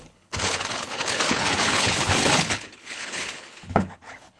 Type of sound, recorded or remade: remade